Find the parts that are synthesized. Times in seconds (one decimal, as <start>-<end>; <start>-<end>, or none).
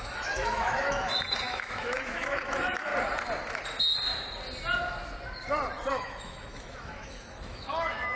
0.0-2.9; 5.9-8.2